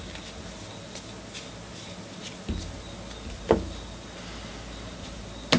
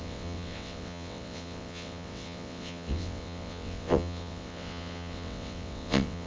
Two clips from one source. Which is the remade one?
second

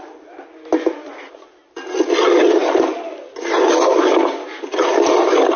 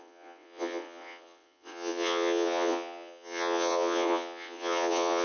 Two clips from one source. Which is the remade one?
second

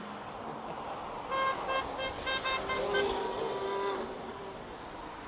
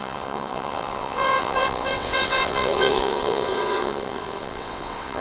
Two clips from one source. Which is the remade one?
second